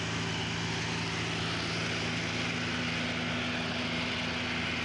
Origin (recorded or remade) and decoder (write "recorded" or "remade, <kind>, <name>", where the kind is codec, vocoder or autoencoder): recorded